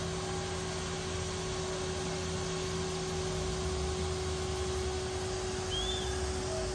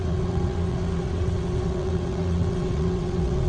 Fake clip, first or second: second